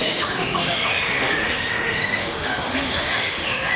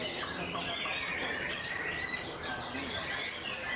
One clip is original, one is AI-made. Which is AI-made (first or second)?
first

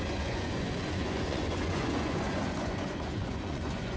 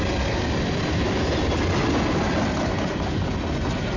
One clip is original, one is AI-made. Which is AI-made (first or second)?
first